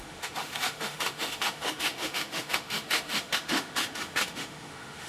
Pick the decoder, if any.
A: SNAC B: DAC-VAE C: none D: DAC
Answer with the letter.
B